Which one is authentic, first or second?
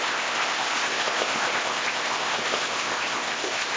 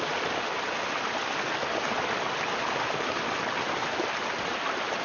second